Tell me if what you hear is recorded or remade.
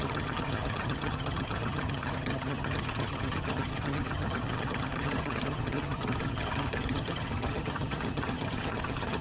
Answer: remade